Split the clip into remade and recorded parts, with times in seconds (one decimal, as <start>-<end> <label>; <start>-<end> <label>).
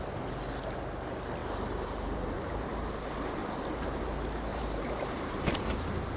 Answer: 0.0-1.4 recorded; 1.4-2.7 remade; 2.7-3.4 recorded; 3.4-4.0 remade; 4.0-4.5 recorded; 4.5-5.7 remade; 5.7-6.2 recorded